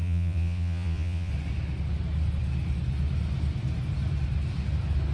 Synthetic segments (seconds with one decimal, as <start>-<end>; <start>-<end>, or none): 0.0-1.3